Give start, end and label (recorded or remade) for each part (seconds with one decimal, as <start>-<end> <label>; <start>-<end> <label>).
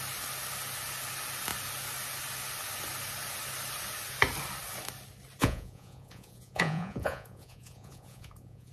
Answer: 0.0-5.4 recorded; 5.4-8.7 remade